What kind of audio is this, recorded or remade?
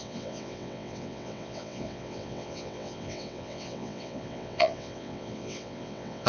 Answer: remade